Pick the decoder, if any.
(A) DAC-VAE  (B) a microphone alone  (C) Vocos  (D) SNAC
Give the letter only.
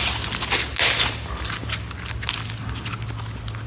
B